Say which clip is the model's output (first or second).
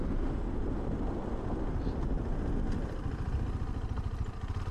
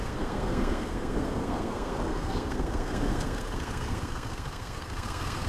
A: second